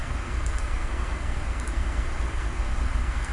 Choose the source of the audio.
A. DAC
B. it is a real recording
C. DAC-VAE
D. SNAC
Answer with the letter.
D